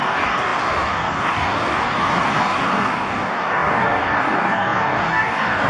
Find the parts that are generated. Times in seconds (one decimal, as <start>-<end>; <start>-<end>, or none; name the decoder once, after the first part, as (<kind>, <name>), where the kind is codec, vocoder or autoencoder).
0.0-5.7 (codec, DAC)